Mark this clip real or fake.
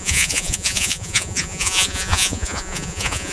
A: fake